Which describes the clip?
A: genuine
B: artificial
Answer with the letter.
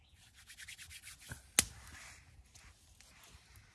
A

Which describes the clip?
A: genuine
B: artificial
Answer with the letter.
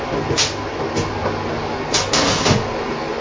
A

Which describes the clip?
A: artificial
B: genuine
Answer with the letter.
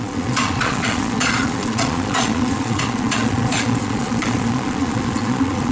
A